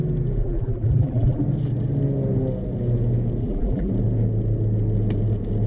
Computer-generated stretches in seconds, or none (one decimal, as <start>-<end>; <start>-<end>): 0.4-1.4; 3.4-3.9